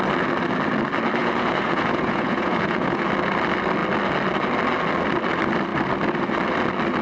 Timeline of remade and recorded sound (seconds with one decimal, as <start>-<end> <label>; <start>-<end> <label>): 0.0-1.2 recorded; 1.2-3.1 remade; 3.1-7.0 recorded